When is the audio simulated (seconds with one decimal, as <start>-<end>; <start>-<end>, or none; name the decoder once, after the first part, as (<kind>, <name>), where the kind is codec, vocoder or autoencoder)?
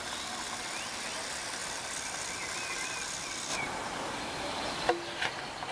3.5-4.9 (vocoder, BigVGAN v2)